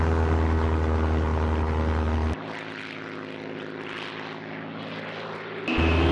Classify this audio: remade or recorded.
recorded